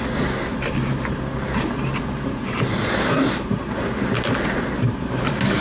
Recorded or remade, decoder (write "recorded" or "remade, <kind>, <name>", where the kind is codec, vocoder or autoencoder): recorded